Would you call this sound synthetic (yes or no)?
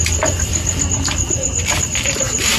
yes